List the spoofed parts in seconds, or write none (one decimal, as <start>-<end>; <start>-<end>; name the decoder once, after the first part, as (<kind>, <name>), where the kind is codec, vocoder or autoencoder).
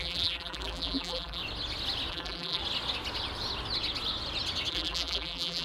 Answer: 0.0-1.4 (vocoder, BigVGAN v2); 2.1-2.6; 4.7-5.6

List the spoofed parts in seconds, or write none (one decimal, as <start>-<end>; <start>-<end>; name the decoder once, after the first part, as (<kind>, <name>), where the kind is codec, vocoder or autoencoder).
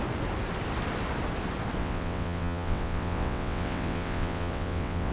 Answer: 1.8-5.1 (vocoder, WaveNeXt)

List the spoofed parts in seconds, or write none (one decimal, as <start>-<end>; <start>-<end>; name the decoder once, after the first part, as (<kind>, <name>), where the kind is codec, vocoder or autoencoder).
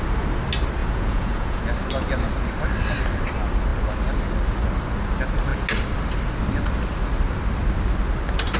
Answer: 0.8-1.6 (vocoder, Vocos)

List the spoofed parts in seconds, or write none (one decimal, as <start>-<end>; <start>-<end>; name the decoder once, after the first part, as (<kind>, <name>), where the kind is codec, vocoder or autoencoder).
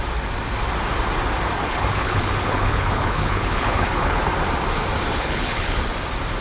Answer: 1.6-4.3 (codec, HILCodec); 5.1-5.8